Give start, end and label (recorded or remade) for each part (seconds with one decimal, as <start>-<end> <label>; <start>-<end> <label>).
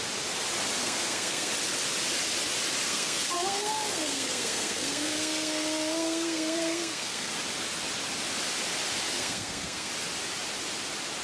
0.0-0.8 recorded; 0.8-1.5 remade; 1.5-2.8 recorded; 2.8-7.3 remade; 7.3-9.1 recorded; 9.1-9.9 remade; 9.9-11.2 recorded